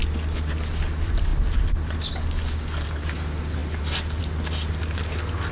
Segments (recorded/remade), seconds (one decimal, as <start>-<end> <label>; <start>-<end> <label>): 0.0-5.5 recorded